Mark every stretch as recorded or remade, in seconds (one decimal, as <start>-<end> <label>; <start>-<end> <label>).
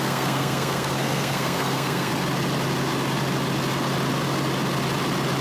0.0-2.1 remade; 2.1-5.4 recorded